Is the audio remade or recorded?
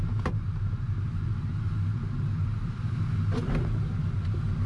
recorded